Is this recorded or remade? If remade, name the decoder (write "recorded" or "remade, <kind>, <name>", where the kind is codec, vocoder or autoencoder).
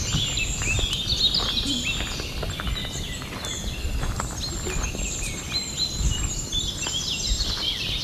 recorded